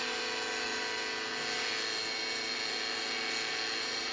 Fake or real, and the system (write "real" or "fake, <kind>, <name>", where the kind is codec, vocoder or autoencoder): real